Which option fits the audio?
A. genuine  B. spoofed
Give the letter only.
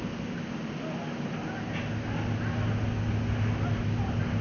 A